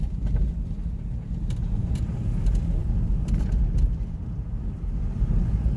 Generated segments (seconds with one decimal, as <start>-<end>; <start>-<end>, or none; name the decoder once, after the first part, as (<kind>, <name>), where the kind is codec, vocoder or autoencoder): none